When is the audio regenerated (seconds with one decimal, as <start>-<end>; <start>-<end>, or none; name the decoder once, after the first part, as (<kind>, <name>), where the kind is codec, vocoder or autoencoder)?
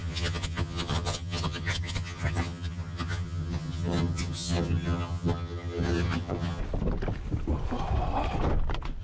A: 0.0-6.6 (vocoder, HiFi-GAN)